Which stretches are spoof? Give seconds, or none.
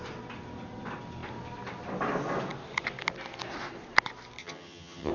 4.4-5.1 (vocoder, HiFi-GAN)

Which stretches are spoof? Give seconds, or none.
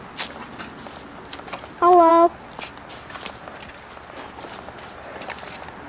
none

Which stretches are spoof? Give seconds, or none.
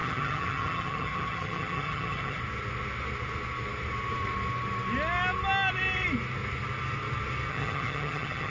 0.0-2.4 (vocoder, HiFi-GAN); 7.5-8.5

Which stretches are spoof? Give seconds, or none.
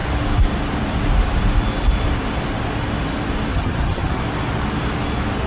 3.5-4.2 (vocoder, HiFi-GAN)